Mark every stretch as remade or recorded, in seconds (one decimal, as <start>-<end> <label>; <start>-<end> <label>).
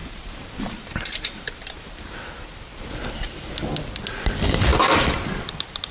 0.0-3.5 remade; 3.5-5.9 recorded